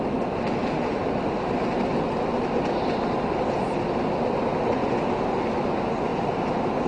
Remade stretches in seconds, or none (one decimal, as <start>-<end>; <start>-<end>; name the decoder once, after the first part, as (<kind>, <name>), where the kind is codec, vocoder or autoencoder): none